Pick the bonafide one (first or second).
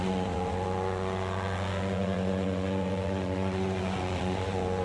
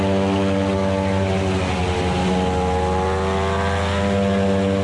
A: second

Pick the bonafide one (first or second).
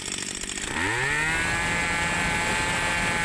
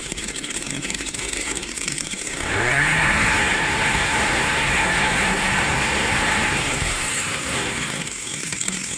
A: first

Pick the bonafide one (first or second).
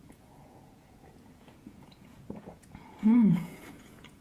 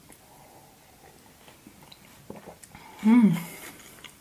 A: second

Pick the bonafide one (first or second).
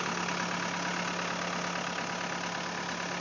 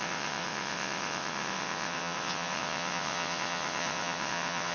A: first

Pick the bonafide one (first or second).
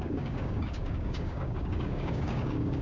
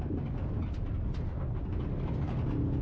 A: second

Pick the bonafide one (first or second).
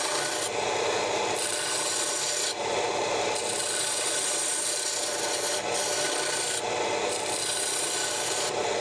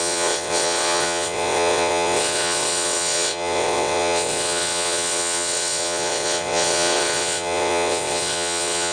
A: first